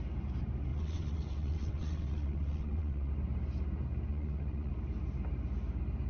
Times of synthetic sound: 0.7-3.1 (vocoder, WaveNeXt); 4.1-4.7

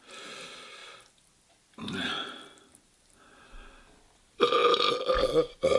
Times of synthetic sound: none

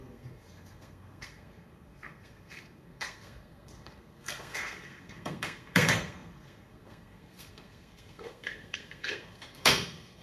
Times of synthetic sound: 0.0-10.2 (codec, SNAC)

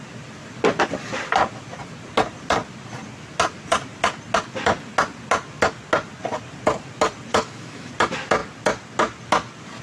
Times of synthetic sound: 7.3-7.9 (autoencoder, DAC-VAE)

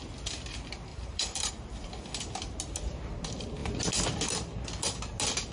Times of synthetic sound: 0.9-1.5 (vocoder, BigVGAN v2)

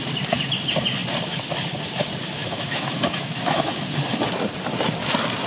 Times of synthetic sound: 2.4-3.6 (autoencoder, DAC-VAE)